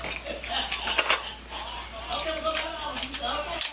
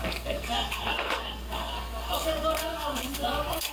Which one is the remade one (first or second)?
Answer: second